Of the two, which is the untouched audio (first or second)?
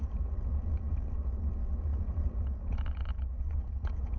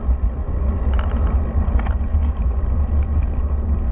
second